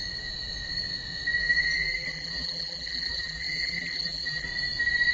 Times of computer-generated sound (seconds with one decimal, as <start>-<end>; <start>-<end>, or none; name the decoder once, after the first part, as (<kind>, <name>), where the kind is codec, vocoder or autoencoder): 1.4-4.5 (vocoder, BigVGAN v2)